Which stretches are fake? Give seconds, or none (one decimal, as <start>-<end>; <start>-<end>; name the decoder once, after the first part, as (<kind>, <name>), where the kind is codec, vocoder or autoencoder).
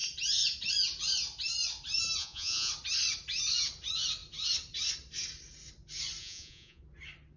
2.2-2.7 (vocoder, Vocos); 6.2-6.8